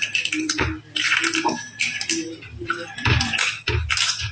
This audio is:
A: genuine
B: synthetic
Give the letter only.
A